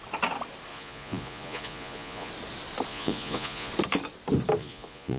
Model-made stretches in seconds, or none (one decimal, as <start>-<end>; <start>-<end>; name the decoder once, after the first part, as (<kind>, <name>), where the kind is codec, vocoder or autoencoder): 0.7-2.3 (vocoder, Vocos); 2.9-3.7; 4.6-5.2